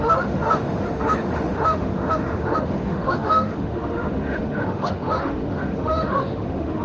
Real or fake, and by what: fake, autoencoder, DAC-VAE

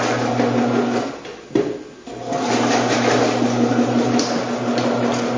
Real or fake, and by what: real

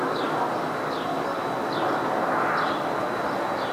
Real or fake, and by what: real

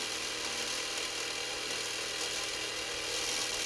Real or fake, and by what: real